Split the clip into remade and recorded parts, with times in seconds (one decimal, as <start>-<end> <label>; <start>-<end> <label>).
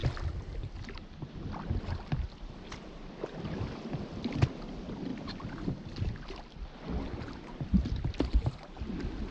0.0-9.3 recorded